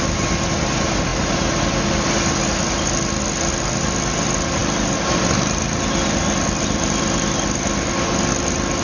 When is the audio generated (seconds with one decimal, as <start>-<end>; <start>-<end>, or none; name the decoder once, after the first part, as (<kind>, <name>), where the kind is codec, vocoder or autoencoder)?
none